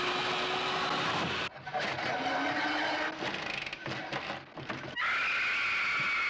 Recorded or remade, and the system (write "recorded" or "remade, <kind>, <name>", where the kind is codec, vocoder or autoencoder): recorded